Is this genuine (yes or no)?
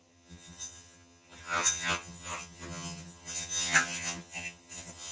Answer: no